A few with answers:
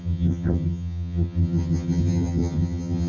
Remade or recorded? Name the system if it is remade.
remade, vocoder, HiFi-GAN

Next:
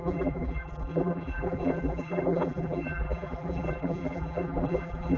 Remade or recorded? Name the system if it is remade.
remade, vocoder, BigVGAN v2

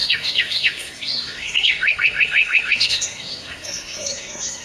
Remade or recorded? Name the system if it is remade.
remade, codec, SNAC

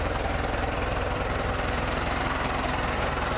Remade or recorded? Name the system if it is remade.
remade, vocoder, BigVGAN v2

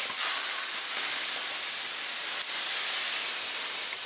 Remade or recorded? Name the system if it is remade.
recorded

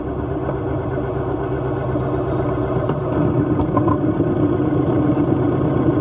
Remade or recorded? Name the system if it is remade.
recorded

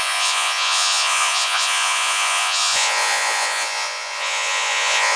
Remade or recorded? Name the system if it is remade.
remade, vocoder, Vocos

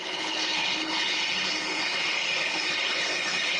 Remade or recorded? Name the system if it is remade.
remade, codec, HILCodec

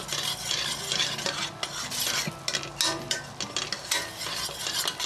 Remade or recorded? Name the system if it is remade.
recorded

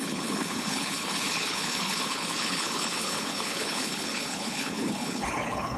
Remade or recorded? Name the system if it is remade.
remade, codec, HILCodec